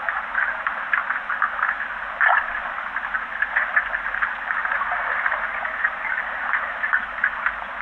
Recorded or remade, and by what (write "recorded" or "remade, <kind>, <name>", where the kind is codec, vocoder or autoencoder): recorded